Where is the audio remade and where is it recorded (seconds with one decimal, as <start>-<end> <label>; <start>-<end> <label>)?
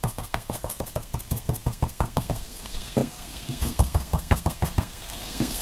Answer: 0.0-5.6 remade